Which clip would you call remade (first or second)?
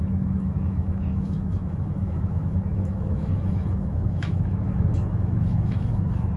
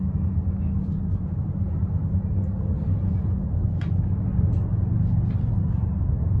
first